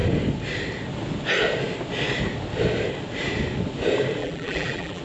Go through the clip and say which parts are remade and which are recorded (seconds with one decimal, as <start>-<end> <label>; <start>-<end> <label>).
0.0-4.2 recorded; 4.2-5.0 remade